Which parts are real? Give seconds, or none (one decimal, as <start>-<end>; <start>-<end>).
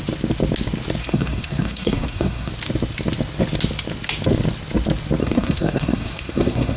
0.0-1.0; 2.5-5.2